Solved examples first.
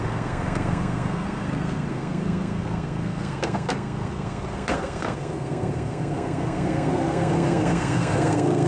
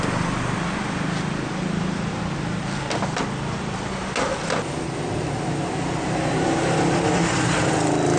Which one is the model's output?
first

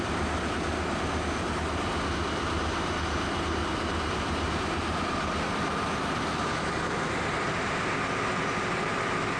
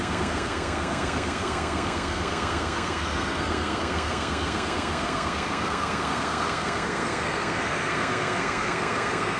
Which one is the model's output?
second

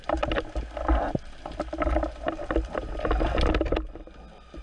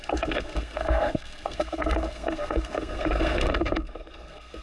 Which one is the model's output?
second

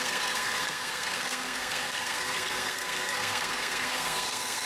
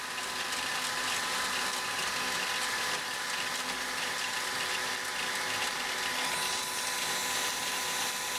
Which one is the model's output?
first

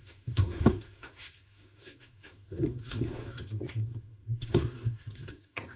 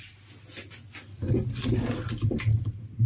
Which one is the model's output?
first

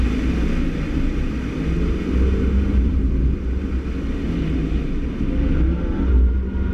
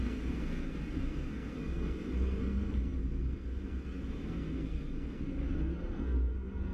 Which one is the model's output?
second